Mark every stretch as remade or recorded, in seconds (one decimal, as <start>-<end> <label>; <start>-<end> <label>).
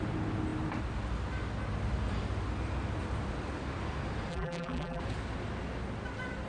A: 0.0-4.3 recorded; 4.3-5.0 remade; 5.0-6.5 recorded